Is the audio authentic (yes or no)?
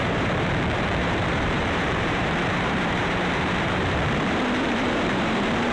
no